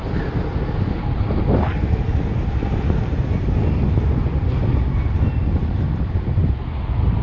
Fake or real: real